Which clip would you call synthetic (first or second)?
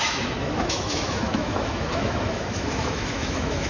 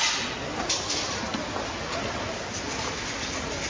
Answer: first